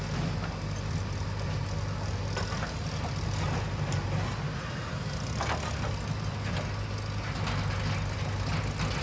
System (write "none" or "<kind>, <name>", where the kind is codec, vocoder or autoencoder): none